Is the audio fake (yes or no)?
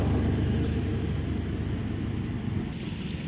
no